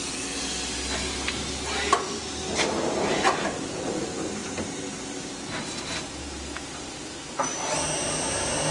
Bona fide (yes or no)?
yes